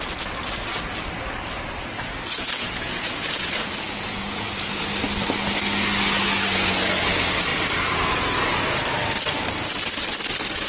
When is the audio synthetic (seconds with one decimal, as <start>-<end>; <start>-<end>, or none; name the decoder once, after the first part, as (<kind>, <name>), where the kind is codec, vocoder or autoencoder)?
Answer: 2.6-4.8 (vocoder, Vocos)